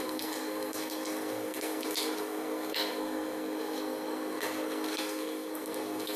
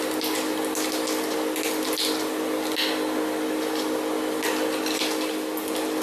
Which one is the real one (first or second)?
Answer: second